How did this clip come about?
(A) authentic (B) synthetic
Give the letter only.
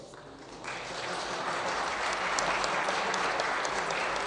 A